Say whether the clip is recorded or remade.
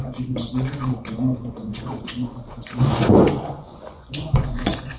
remade